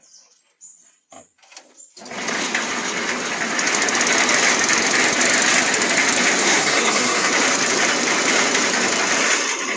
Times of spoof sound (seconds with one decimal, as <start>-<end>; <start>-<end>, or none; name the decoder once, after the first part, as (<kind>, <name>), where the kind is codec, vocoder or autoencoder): 6.4-7.3 (codec, SNAC)